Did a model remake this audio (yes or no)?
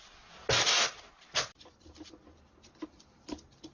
no